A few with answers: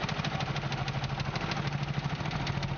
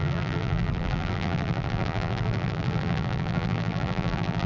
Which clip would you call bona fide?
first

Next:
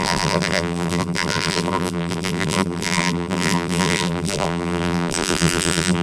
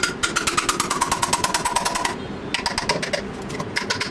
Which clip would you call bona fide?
second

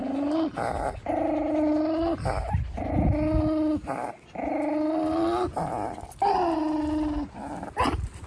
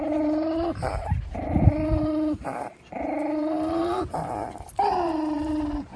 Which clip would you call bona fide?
first